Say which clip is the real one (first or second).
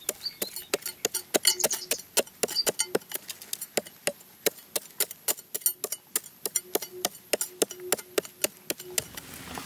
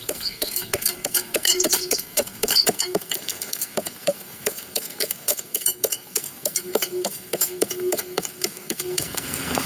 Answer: first